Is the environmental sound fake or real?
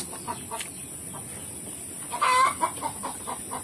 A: real